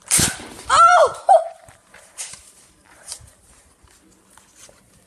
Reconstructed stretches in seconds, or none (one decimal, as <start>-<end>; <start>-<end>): 1.3-3.8